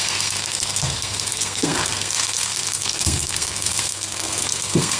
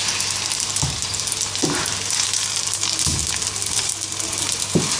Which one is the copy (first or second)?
first